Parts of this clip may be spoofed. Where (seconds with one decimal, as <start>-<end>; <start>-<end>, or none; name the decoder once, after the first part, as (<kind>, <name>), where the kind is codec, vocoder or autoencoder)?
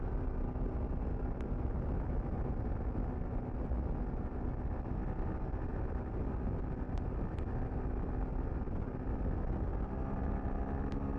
none